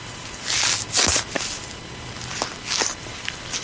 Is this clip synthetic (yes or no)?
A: no